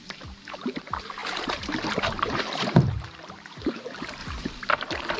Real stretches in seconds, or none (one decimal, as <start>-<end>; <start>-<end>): none